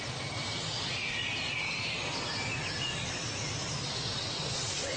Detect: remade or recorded recorded